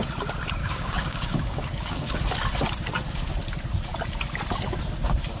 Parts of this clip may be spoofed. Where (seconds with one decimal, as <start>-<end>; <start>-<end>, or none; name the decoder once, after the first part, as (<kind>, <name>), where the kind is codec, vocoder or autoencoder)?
0.6-2.2 (codec, DAC)